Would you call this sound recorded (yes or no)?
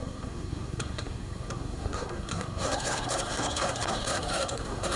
no